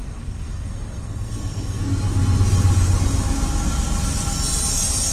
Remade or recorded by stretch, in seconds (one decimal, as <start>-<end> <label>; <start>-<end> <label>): 0.0-1.8 remade; 1.8-5.1 recorded